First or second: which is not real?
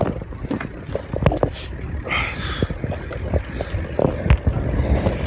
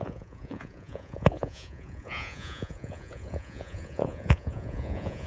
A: second